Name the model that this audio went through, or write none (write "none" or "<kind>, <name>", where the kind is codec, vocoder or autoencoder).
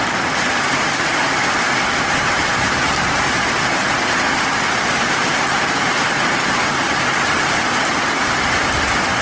none